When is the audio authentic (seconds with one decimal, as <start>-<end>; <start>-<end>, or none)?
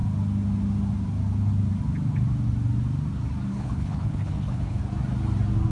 0.0-3.5; 4.8-5.7